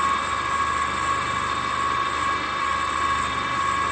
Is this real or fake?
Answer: real